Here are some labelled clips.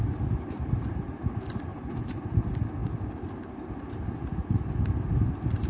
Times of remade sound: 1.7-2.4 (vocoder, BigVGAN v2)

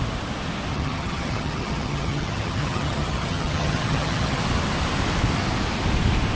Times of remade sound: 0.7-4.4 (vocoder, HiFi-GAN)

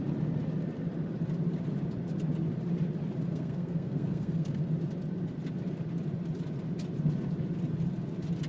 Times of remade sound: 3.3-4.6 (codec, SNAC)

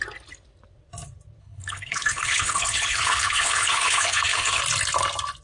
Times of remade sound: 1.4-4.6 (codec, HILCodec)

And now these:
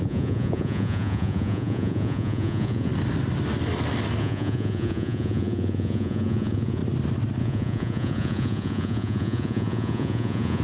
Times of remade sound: 0.0-2.9 (vocoder, Vocos); 4.2-6.8; 7.4-10.6